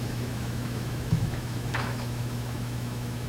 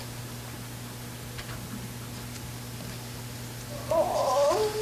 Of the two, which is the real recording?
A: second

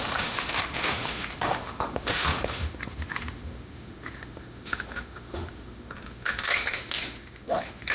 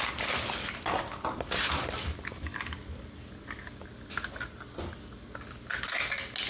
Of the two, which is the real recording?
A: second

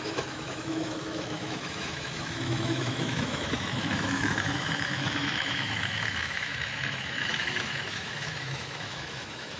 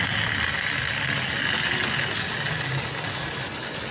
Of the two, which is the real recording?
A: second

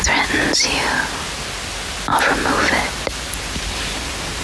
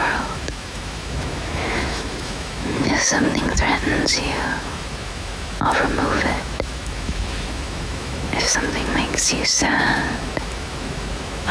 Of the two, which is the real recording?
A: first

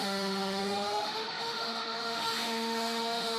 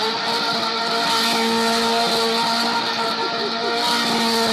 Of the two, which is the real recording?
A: second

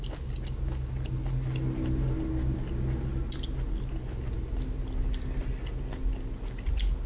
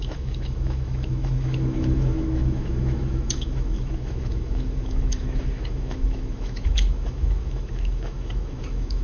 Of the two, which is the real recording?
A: first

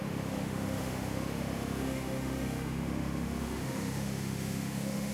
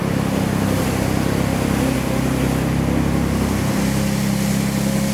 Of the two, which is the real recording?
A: second